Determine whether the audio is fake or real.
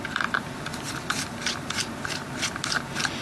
fake